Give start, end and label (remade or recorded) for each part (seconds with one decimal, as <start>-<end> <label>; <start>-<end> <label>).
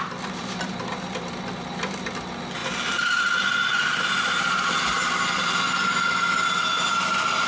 0.0-7.5 recorded